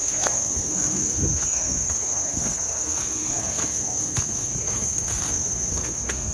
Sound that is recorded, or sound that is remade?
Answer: remade